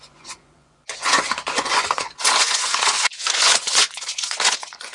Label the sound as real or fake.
fake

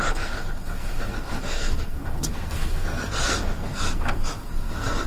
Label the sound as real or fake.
fake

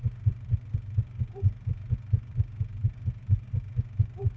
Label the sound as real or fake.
real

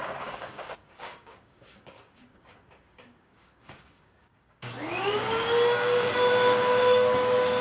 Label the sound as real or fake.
fake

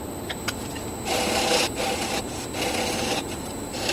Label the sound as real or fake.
real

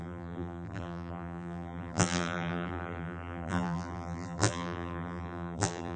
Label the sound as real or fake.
fake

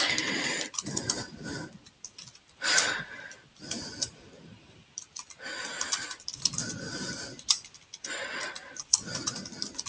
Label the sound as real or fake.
fake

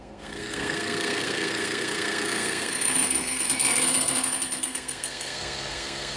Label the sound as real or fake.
fake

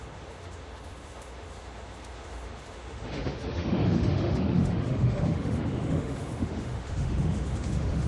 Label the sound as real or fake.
fake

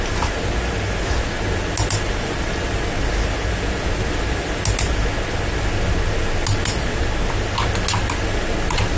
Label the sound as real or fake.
real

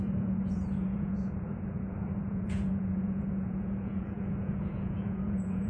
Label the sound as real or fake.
fake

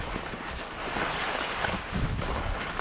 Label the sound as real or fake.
real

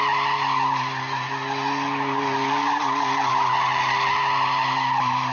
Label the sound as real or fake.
real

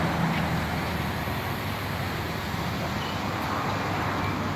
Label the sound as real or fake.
real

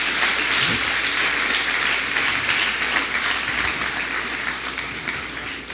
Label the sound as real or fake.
real